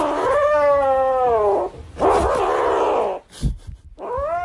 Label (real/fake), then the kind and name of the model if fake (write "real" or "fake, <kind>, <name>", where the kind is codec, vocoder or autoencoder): real